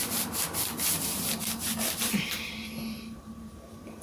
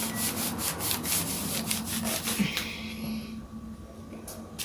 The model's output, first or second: first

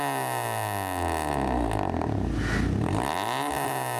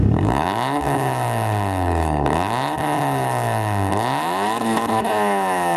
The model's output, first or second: second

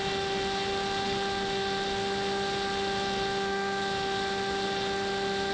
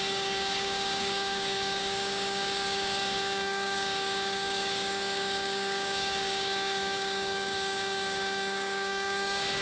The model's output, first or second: second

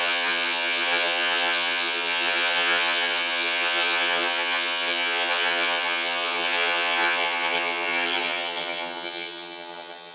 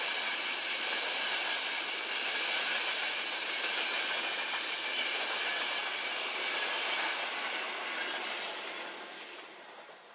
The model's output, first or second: first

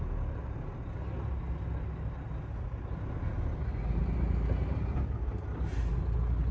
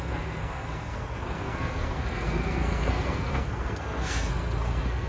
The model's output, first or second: second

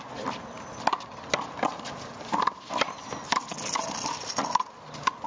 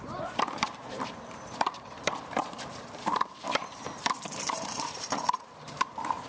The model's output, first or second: second